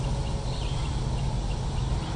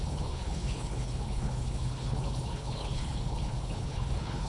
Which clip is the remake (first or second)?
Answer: second